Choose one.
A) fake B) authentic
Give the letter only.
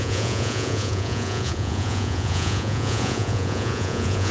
A